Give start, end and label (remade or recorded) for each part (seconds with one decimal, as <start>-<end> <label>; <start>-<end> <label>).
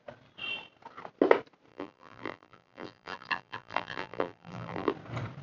0.0-1.7 recorded; 1.7-4.9 remade; 4.9-5.4 recorded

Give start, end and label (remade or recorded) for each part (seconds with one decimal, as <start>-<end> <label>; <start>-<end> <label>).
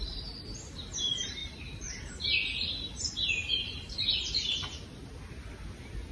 0.0-1.4 recorded; 1.4-2.1 remade; 2.1-6.1 recorded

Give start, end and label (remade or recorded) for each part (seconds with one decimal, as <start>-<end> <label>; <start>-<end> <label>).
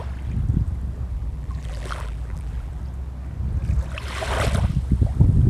0.0-1.1 recorded; 1.1-2.8 remade; 2.8-5.5 recorded